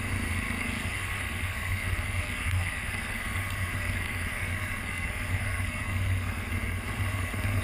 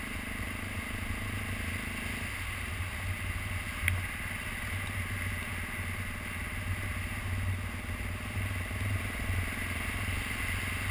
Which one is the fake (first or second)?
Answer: first